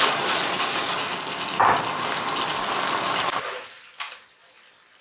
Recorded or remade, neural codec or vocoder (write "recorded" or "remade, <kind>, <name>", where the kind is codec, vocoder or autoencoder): recorded